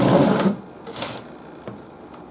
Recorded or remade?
recorded